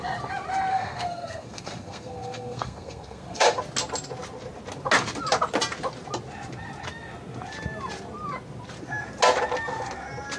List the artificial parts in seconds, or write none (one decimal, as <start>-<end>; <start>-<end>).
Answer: 0.7-3.6